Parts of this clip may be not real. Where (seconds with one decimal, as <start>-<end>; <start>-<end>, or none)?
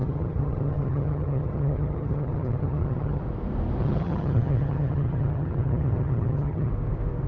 0.0-3.2; 3.8-6.7